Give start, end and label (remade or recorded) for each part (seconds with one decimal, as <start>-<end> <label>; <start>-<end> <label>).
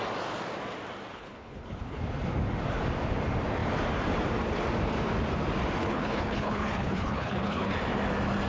0.0-1.1 recorded; 1.1-2.0 remade; 2.0-5.8 recorded; 5.8-7.7 remade; 7.7-8.5 recorded